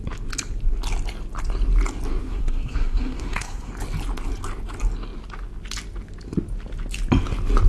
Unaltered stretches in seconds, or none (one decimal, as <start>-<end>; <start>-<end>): 0.0-2.3; 3.7-7.7